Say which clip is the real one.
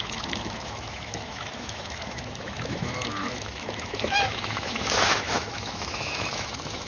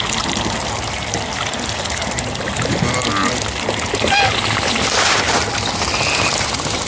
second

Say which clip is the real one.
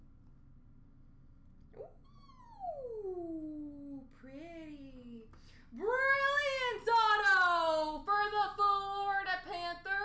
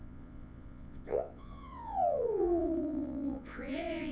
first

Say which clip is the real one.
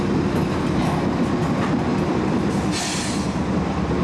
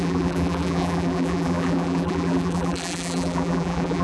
first